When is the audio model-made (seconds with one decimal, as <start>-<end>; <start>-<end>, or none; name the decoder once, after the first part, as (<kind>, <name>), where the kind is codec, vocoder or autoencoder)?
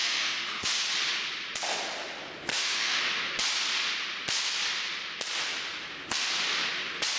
0.0-0.7 (autoencoder, DAC-VAE); 2.5-3.0